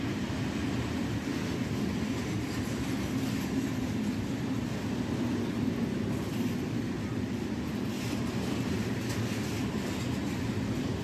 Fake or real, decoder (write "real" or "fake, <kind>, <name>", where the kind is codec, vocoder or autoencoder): real